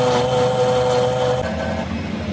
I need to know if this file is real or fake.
real